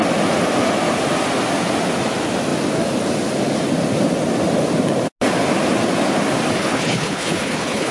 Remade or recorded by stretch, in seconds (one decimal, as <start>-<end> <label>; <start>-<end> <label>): 0.0-6.6 recorded; 6.6-7.9 remade